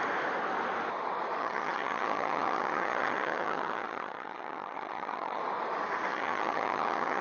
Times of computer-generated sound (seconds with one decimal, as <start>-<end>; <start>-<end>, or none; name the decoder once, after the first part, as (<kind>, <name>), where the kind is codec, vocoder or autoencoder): 1.4-5.4 (vocoder, HiFi-GAN); 6.1-7.2